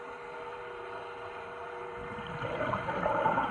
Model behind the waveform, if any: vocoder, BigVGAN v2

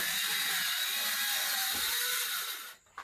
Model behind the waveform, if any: none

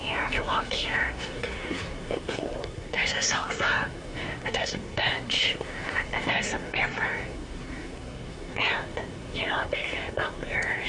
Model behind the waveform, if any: codec, SNAC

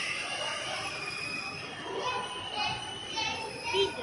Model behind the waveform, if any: none